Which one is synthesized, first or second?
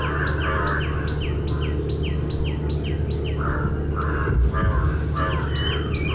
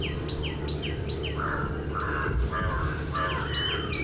second